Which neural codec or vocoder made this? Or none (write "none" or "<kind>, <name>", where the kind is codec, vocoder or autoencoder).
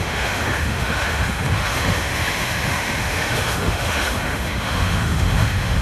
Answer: autoencoder, DAC-VAE